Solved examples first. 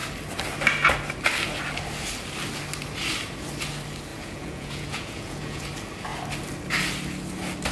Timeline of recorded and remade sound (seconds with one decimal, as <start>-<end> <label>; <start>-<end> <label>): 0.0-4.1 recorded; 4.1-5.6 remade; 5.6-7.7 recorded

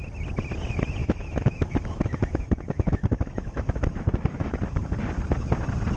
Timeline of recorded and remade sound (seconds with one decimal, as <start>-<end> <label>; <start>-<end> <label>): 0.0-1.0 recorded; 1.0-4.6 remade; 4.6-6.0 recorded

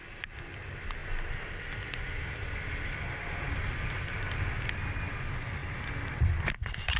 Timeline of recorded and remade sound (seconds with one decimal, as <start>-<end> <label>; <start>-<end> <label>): 0.0-7.0 recorded

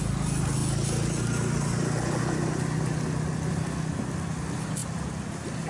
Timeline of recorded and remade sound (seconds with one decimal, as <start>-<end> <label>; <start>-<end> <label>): 0.0-5.7 recorded

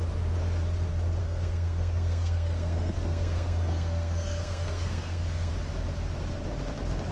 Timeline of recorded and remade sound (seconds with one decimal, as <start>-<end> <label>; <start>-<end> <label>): 0.0-1.2 recorded; 1.2-5.5 remade; 5.5-7.1 recorded

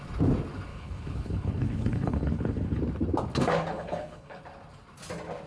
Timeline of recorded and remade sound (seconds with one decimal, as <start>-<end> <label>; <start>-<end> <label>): 0.0-0.7 recorded; 0.7-2.8 remade; 2.8-3.7 recorded; 3.7-4.4 remade; 4.4-5.5 recorded

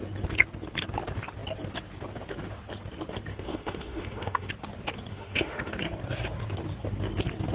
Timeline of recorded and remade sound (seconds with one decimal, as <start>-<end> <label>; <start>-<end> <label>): 0.0-3.3 recorded; 3.3-4.5 remade; 4.5-5.1 recorded; 5.1-5.7 remade; 5.7-7.5 recorded

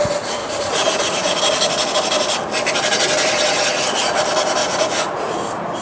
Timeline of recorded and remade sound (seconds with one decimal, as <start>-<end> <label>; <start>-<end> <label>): 0.0-0.4 recorded; 0.4-1.4 remade; 1.4-4.6 recorded; 4.6-5.3 remade; 5.3-5.8 recorded